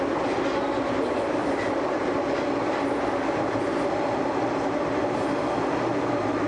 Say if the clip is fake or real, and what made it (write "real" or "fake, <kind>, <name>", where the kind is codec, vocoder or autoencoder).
real